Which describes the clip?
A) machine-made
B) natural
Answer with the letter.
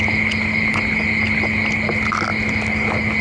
B